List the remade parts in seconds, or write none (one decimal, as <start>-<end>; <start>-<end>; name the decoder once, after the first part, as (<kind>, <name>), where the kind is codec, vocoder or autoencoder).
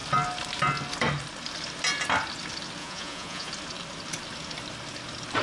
2.8-3.5 (vocoder, Vocos)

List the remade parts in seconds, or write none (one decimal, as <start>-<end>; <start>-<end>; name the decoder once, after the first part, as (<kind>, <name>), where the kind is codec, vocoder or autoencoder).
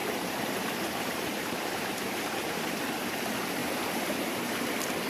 0.0-2.8 (vocoder, BigVGAN v2); 3.6-4.5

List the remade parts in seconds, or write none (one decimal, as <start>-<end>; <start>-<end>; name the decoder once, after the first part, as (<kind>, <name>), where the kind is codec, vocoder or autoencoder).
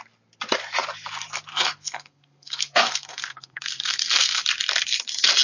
1.5-4.4 (codec, SNAC)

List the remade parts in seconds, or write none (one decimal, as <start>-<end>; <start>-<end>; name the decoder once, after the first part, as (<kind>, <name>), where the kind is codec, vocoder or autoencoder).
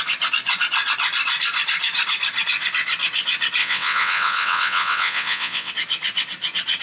3.6-5.7 (vocoder, WaveNeXt)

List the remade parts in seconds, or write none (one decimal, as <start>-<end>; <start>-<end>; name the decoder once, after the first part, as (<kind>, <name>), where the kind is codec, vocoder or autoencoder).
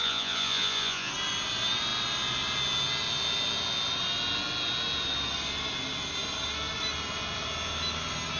0.0-1.1 (vocoder, Vocos)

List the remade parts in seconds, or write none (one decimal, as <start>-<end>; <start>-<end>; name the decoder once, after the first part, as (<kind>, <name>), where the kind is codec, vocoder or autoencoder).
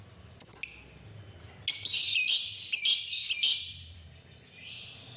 2.0-4.4 (vocoder, BigVGAN v2)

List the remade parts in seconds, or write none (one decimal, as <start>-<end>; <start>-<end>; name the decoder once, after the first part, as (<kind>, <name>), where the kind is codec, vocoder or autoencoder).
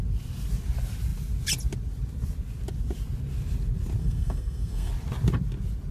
4.0-4.9 (codec, SNAC)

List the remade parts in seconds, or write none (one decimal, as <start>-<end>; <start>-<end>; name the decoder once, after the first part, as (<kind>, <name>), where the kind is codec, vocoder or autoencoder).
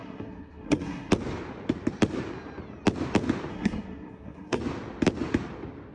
0.0-1.1 (codec, SNAC); 3.5-4.6